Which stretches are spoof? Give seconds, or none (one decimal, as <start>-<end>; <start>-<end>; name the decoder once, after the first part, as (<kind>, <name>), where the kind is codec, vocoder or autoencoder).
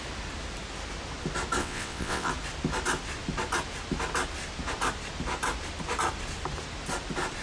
1.6-2.3 (vocoder, WaveNeXt)